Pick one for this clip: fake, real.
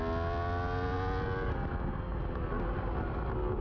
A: real